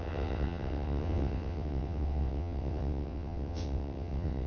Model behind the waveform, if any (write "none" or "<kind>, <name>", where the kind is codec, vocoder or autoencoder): vocoder, WaveNeXt